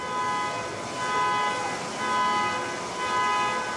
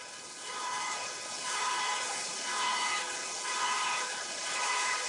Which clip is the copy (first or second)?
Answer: second